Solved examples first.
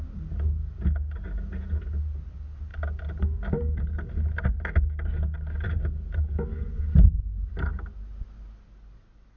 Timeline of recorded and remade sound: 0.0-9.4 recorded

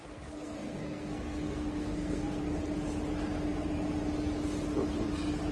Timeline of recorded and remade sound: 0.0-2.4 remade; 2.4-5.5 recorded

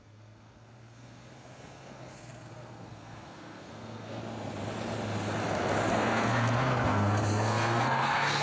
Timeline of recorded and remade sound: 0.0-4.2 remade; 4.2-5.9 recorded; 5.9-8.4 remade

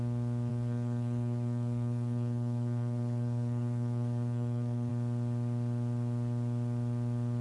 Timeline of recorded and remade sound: 0.0-0.5 recorded; 0.5-4.9 remade; 4.9-7.4 recorded

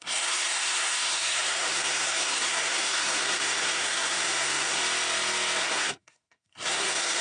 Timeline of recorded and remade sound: 0.0-4.8 remade; 4.8-5.6 recorded; 5.6-7.2 remade